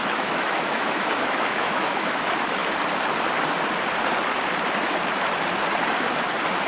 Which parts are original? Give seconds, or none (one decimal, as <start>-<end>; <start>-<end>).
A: 2.2-6.7

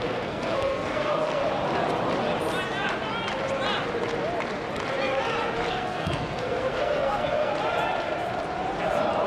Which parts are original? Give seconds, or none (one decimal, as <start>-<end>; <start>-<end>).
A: 1.4-5.7; 7.5-9.3

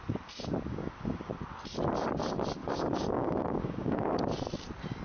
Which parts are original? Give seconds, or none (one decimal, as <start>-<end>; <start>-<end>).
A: 0.0-0.7; 1.3-2.6; 4.2-5.0

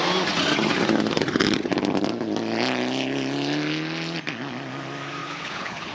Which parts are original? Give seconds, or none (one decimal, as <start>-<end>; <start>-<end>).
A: 0.0-5.2